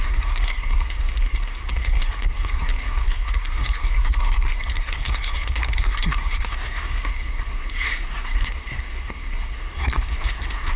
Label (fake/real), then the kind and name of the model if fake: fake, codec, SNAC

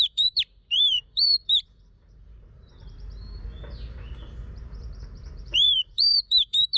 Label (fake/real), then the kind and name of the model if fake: fake, vocoder, BigVGAN v2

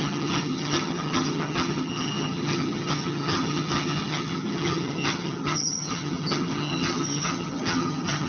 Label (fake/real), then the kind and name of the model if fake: fake, vocoder, HiFi-GAN